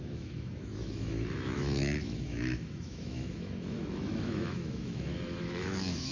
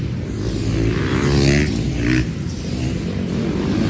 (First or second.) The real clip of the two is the second